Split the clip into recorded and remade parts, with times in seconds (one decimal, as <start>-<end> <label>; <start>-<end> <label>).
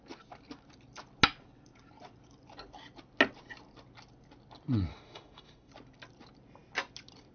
0.0-4.9 recorded; 4.9-5.7 remade; 5.7-7.3 recorded